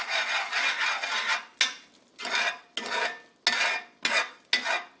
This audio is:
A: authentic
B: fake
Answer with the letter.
A